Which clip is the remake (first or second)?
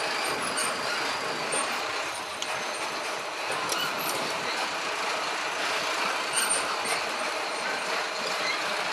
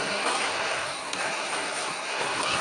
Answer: second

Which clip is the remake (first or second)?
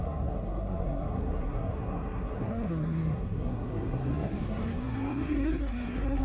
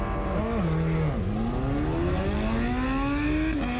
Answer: first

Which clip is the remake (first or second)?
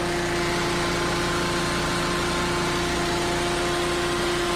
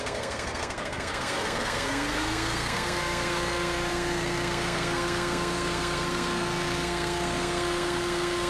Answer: second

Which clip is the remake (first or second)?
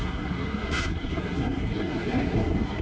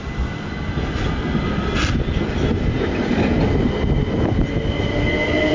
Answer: first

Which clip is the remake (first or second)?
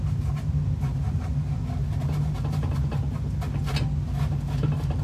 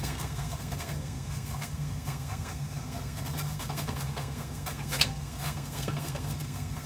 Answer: second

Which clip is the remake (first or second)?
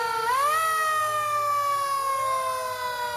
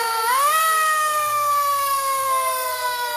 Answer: second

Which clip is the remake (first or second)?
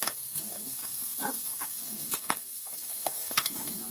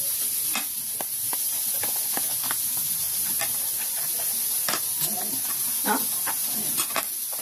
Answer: first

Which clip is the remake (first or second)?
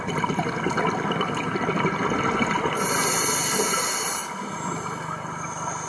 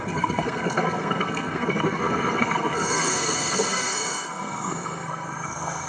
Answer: second